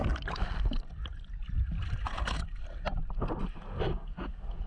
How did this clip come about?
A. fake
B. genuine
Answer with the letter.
B